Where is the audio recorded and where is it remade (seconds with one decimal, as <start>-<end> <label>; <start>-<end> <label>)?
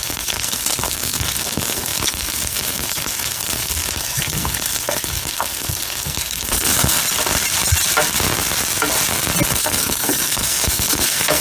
0.0-7.0 remade; 7.0-9.5 recorded; 9.5-11.4 remade